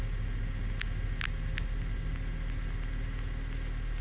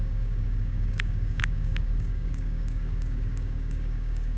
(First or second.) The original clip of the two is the first